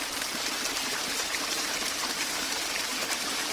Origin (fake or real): fake